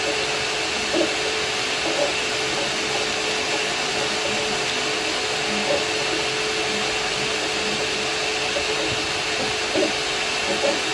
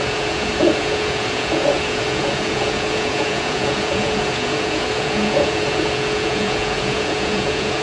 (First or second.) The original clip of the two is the first